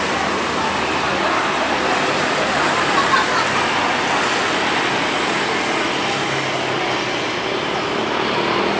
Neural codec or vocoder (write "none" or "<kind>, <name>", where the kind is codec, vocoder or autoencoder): none